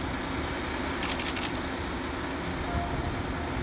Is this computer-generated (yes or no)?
no